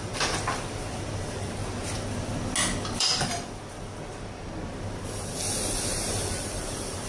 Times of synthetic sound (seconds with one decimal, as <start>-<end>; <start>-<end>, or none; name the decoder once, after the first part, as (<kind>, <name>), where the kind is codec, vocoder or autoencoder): 0.0-1.6 (vocoder, BigVGAN v2); 5.9-7.1